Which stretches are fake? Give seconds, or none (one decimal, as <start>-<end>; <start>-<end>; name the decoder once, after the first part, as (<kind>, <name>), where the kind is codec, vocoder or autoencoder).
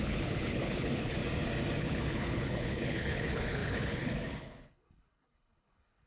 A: 0.0-1.2 (codec, HILCodec); 1.8-6.1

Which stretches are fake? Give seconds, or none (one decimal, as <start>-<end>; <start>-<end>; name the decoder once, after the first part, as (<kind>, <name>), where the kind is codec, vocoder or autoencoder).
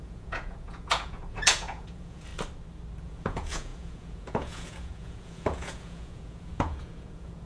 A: 0.0-2.3 (vocoder, Vocos); 3.0-7.4